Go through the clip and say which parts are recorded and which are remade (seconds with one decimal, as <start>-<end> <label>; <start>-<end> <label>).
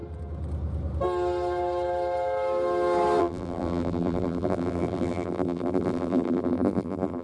0.0-3.2 recorded; 3.2-7.2 remade